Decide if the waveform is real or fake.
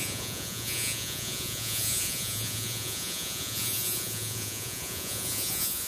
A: fake